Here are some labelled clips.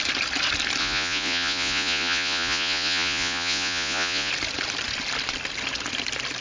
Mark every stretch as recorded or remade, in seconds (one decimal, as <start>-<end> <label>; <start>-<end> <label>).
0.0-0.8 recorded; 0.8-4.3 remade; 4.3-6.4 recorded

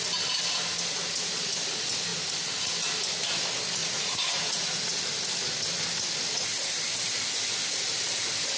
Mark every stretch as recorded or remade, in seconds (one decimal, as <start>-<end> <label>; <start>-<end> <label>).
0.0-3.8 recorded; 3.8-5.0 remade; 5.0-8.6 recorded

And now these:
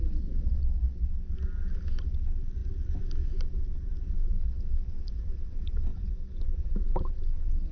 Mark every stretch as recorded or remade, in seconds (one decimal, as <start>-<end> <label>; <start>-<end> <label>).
0.0-5.9 recorded; 5.9-6.4 remade; 6.4-7.7 recorded

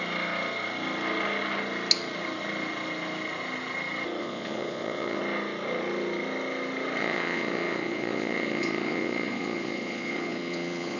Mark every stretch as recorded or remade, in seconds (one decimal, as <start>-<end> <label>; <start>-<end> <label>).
0.0-4.2 recorded; 4.2-5.2 remade; 5.2-7.0 recorded; 7.0-11.0 remade

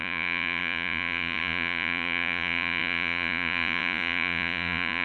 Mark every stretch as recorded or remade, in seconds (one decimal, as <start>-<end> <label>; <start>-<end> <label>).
0.0-5.0 remade

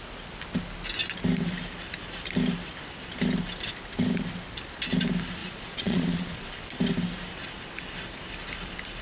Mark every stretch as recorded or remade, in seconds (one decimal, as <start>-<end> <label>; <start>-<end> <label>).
0.0-5.4 recorded; 5.4-6.5 remade; 6.5-9.0 recorded

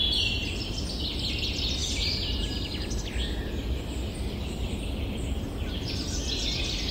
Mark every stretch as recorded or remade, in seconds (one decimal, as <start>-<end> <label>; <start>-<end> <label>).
0.0-6.9 recorded